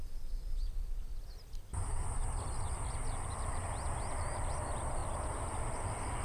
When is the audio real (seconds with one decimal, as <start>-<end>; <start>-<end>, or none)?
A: 0.0-6.2